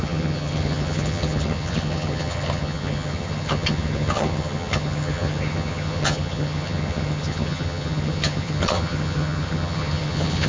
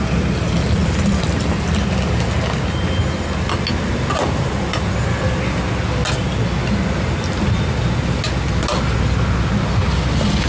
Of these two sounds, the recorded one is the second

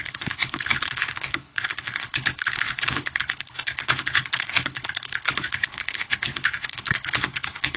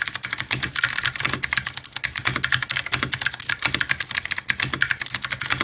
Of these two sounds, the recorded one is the second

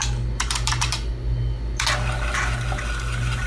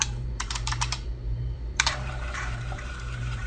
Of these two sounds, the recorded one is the first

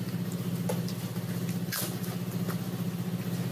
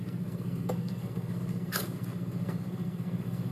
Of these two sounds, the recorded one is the first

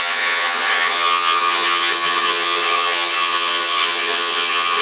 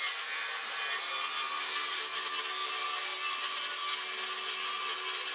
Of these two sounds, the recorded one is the second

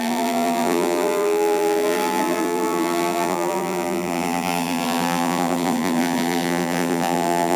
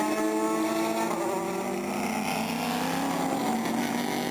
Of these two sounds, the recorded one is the second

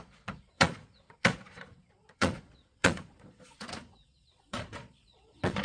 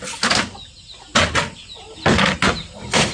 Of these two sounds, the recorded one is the second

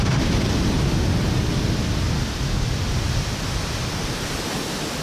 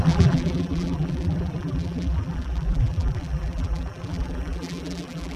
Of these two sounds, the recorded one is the first